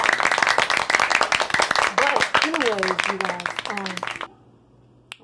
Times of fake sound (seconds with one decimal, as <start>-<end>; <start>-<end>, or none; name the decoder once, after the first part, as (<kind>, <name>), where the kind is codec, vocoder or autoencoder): none